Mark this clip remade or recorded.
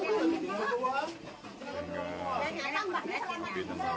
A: recorded